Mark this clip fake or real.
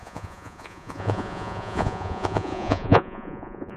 fake